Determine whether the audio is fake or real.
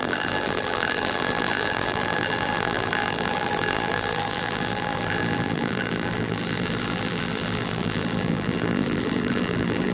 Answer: fake